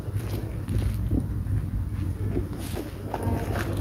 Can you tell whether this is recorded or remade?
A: recorded